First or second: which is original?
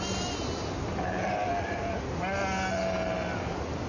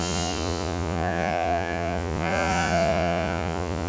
first